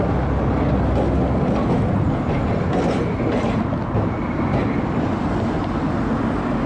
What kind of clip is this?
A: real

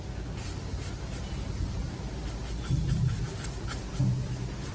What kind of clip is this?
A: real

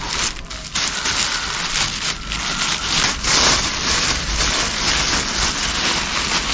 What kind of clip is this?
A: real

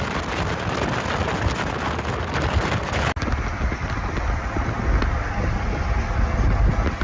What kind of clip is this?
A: real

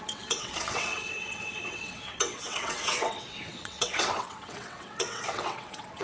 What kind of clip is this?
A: fake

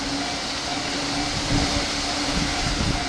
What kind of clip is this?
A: real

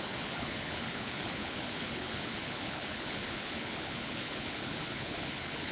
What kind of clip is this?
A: fake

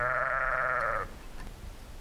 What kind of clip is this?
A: real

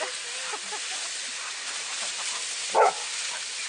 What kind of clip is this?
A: real